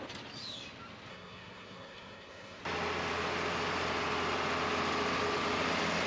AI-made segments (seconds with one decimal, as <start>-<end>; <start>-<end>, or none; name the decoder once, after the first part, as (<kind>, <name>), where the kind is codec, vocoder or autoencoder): 1.1-2.6 (codec, SNAC)